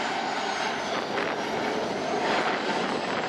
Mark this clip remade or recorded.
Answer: recorded